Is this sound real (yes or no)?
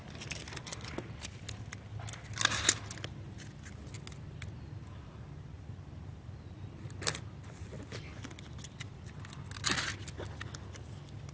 yes